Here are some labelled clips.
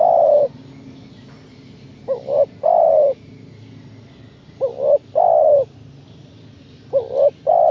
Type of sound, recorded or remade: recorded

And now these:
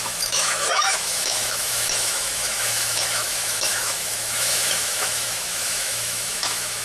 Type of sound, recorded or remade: remade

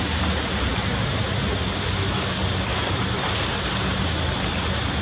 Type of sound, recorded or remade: recorded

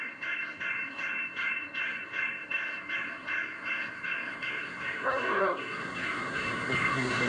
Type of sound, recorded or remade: remade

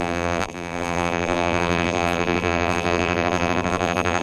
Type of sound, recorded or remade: remade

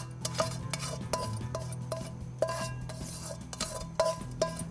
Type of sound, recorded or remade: recorded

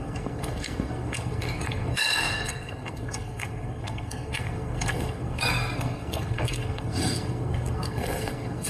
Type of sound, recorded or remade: remade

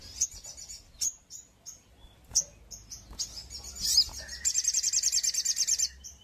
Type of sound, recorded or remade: recorded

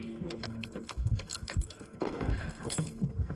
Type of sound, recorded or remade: remade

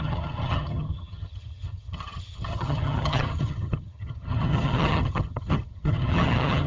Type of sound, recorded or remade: remade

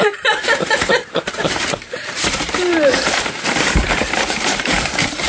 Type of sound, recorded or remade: remade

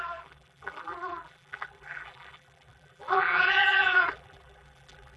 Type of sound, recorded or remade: remade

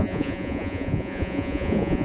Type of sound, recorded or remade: remade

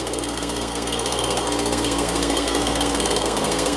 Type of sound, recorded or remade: remade